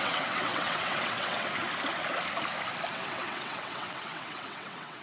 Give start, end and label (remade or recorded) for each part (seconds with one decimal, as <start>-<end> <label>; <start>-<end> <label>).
0.0-1.6 remade; 1.6-2.9 recorded; 2.9-5.0 remade